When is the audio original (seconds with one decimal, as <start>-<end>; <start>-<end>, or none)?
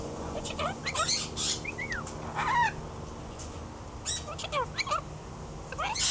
0.8-3.2; 3.7-6.1